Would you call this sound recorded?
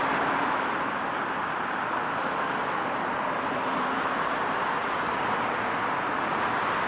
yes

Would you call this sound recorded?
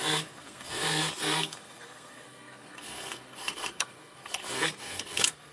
no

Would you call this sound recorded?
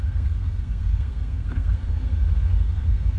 no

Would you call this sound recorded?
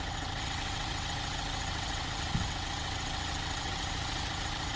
no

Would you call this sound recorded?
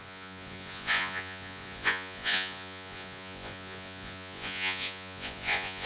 no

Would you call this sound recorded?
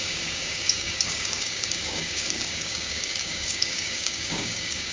no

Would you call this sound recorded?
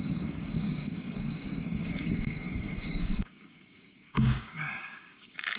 no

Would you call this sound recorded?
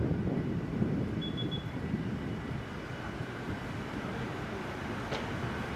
yes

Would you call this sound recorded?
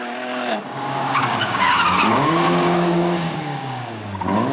no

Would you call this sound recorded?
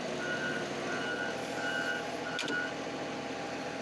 yes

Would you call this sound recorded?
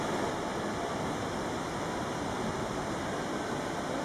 yes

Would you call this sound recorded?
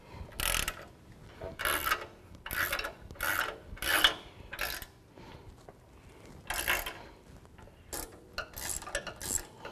yes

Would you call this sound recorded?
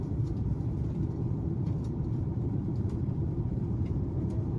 no